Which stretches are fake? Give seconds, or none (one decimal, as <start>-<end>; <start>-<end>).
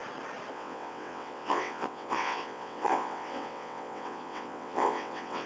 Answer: 0.5-5.5